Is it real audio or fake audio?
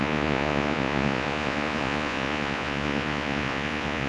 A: fake